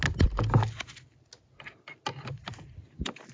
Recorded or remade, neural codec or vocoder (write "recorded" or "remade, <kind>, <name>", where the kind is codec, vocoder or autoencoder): recorded